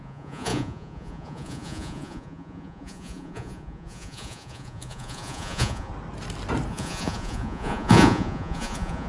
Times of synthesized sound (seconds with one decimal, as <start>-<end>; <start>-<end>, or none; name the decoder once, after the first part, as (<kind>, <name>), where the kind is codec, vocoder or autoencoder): 0.0-5.9 (vocoder, Vocos); 6.7-9.1